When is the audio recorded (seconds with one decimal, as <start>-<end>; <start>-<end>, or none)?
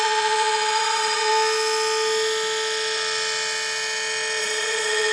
1.3-4.4